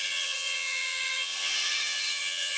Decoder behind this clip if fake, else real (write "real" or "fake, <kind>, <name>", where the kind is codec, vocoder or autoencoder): fake, vocoder, HiFi-GAN